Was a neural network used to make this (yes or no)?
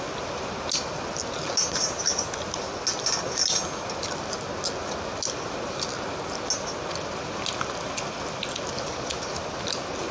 no